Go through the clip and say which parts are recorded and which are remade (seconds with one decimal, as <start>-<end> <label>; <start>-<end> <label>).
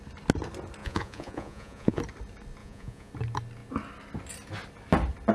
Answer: 0.0-0.8 recorded; 0.8-2.0 remade; 2.0-2.6 recorded; 2.6-3.1 remade; 3.1-5.3 recorded